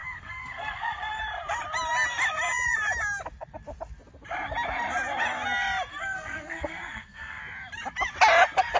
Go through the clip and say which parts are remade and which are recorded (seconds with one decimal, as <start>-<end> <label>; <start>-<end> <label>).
0.0-1.2 remade; 1.2-5.9 recorded; 5.9-7.4 remade; 7.4-8.8 recorded